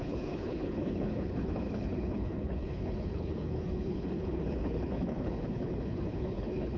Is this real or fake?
fake